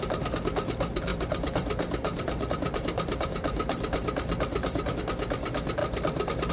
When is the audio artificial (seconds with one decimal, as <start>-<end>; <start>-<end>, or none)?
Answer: 1.1-5.0